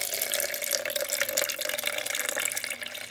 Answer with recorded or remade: recorded